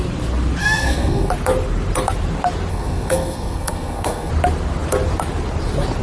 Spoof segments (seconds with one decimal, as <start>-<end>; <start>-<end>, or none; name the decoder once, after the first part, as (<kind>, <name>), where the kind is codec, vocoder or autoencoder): 0.6-1.3 (codec, SNAC); 2.7-4.3